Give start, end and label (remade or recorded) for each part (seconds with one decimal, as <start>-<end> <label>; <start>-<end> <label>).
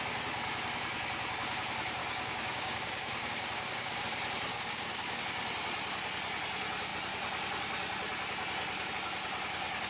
0.0-2.0 recorded; 2.0-4.0 remade; 4.0-4.5 recorded; 4.5-5.2 remade; 5.2-9.9 recorded